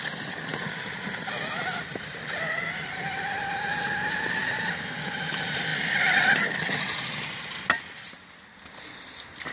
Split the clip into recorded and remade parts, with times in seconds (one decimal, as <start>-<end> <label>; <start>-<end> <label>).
0.0-9.5 recorded